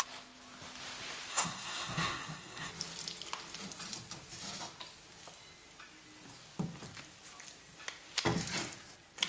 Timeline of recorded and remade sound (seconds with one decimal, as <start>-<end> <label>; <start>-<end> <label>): 0.0-1.3 recorded; 1.3-2.7 remade; 2.7-9.3 recorded